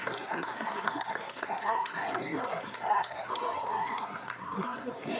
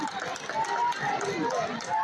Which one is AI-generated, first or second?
first